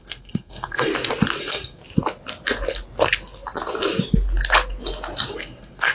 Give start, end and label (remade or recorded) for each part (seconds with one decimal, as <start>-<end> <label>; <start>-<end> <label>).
0.0-0.9 remade; 0.9-1.4 recorded; 1.4-1.8 remade; 1.8-5.3 recorded; 5.3-5.9 remade